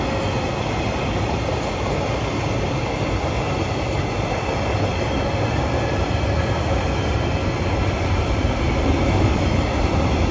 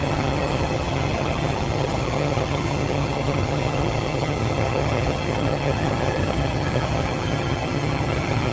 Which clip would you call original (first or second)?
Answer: first